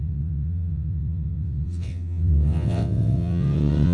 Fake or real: fake